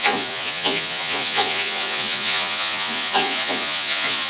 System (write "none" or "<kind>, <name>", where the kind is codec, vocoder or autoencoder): vocoder, Vocos